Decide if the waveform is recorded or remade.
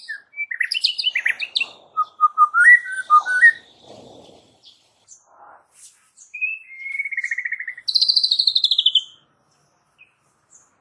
recorded